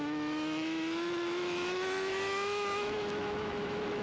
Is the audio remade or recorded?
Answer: remade